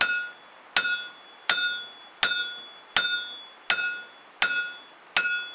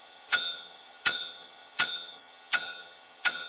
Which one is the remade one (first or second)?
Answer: second